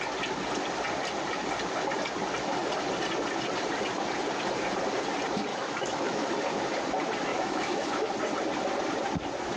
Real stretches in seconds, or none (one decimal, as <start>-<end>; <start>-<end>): 0.0-5.5; 6.3-7.3; 8.1-9.6